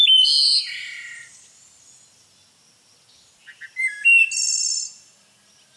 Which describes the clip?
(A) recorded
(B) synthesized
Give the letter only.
A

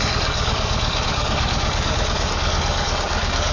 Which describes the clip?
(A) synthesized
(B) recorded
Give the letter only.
A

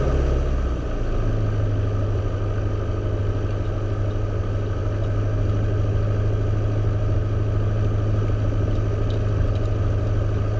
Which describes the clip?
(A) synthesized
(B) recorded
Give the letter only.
B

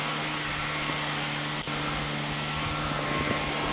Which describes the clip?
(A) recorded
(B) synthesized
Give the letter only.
A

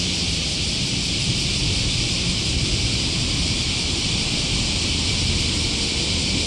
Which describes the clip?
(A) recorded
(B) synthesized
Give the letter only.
B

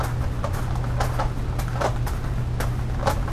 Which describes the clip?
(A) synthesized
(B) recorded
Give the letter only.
B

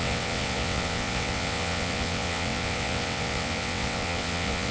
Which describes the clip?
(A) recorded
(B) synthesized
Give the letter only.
B